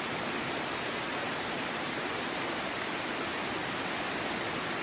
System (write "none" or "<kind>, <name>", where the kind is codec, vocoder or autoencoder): none